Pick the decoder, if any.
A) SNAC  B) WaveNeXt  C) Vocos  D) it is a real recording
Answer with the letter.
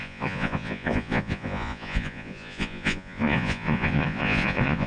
C